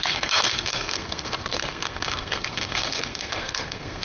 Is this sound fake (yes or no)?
yes